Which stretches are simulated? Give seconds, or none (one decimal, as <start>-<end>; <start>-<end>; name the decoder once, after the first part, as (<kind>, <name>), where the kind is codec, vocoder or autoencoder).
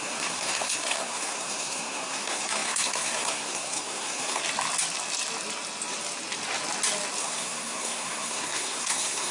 0.0-4.4 (codec, SNAC); 7.2-9.3